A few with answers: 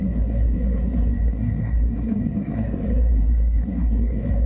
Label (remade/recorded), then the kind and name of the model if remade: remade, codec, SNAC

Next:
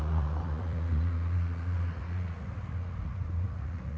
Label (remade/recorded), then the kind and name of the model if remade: remade, vocoder, Vocos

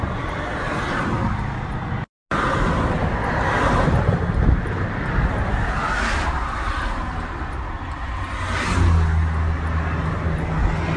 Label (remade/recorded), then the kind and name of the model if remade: recorded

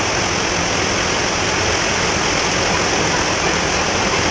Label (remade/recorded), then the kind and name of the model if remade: recorded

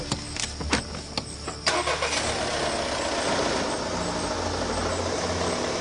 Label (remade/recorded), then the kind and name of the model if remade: recorded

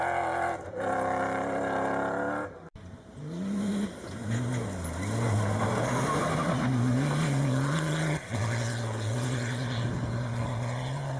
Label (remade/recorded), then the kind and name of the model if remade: recorded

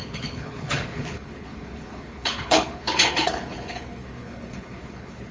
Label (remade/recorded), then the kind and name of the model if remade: remade, codec, HILCodec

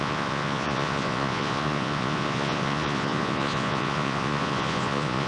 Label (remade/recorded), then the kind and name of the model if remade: remade, vocoder, Vocos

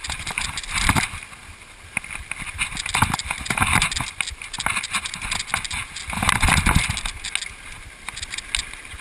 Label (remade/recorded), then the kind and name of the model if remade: recorded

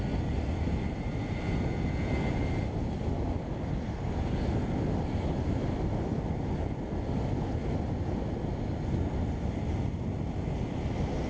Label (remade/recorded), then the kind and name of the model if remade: recorded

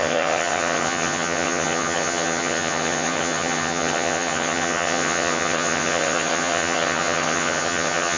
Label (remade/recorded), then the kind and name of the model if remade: remade, vocoder, HiFi-GAN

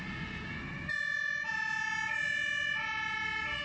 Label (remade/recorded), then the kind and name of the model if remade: recorded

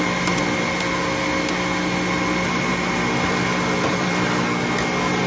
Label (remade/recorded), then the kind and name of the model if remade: recorded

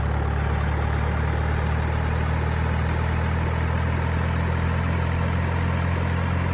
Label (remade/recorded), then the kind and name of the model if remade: recorded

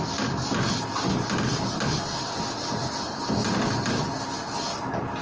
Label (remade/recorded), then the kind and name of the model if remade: recorded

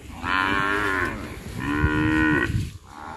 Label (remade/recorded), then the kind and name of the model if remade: recorded